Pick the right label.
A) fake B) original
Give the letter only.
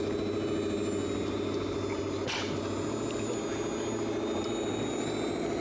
B